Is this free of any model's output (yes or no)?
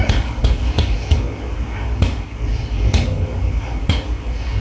no